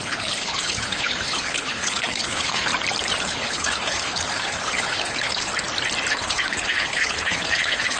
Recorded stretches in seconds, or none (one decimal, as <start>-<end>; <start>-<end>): 2.7-3.2; 5.5-6.1